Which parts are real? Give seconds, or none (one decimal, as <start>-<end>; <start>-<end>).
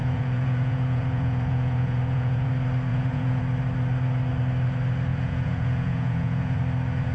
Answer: 2.5-2.9; 3.4-5.1; 6.6-7.1